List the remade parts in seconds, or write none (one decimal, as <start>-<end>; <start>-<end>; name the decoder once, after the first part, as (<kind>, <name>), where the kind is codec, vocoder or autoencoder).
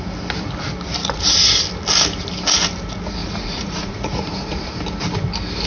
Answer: 1.0-1.5 (vocoder, Vocos); 3.2-4.8